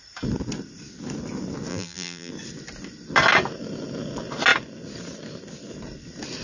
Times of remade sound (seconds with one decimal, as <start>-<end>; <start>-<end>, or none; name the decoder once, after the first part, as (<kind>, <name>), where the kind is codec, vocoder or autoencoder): 1.7-2.3 (vocoder, BigVGAN v2)